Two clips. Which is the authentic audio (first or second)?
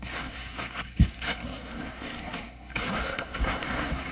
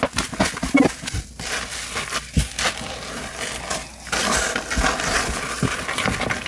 second